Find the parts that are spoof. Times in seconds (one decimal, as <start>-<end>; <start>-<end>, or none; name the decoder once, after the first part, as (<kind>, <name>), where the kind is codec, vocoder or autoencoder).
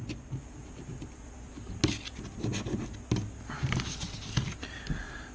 none